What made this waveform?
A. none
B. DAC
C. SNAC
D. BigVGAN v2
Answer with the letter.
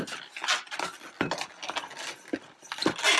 A